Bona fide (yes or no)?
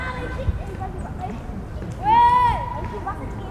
yes